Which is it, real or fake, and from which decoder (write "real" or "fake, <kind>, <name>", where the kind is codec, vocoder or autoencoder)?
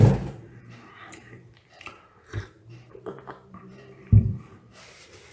fake, vocoder, BigVGAN v2